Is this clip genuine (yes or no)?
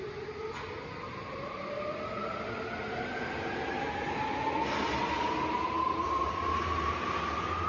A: yes